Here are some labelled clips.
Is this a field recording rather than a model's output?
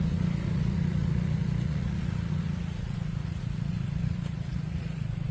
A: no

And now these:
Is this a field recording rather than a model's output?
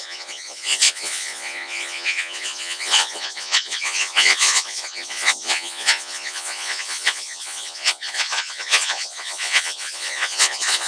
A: no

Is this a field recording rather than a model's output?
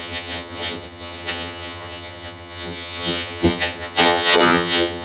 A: no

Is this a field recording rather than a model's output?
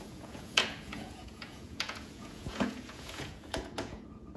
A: no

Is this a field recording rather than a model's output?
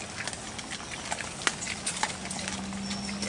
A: yes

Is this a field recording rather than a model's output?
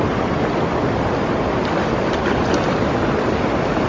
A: yes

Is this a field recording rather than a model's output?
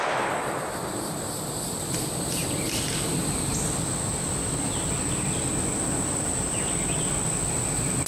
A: yes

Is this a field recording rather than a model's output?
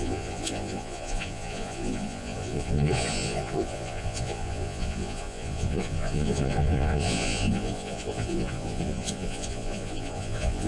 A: no